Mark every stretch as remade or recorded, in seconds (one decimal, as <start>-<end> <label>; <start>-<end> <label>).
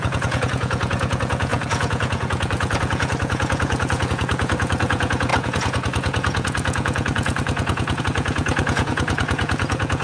0.0-10.0 remade